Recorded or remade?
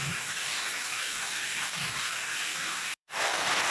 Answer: remade